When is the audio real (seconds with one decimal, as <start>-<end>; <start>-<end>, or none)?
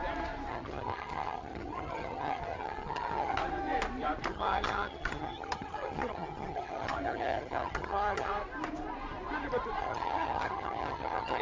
0.0-0.5; 3.4-4.3; 8.3-9.8